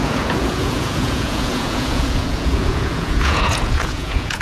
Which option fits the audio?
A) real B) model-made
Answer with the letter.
B